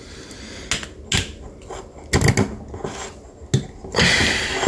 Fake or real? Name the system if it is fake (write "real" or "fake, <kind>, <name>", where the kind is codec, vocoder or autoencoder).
real